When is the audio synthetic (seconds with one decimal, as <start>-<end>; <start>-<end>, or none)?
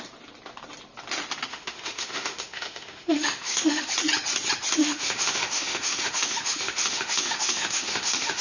1.5-3.9; 4.8-8.4